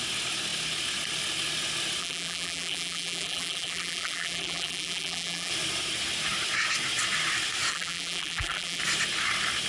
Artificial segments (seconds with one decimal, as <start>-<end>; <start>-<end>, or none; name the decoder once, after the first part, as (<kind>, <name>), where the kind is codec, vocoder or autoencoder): 2.0-5.5 (vocoder, BigVGAN v2); 7.7-8.8